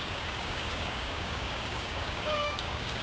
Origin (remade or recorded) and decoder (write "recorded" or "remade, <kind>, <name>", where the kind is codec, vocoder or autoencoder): remade, codec, DAC